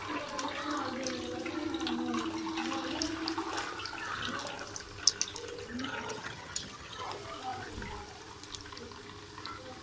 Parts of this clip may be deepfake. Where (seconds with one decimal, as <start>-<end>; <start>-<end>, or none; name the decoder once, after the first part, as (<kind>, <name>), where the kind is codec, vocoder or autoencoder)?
5.7-7.1 (vocoder, HiFi-GAN)